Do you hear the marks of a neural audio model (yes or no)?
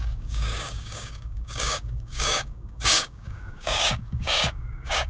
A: yes